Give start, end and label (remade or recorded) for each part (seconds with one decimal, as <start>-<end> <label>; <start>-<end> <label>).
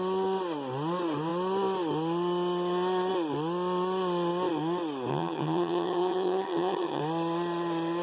0.0-5.1 recorded; 5.1-7.0 remade; 7.0-8.0 recorded